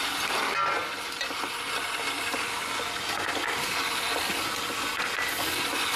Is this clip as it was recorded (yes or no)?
yes